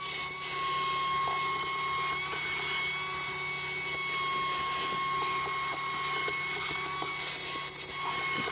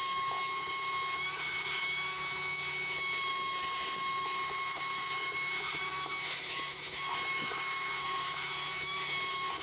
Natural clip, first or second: first